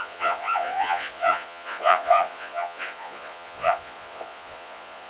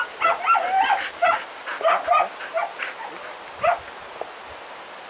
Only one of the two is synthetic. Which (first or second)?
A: first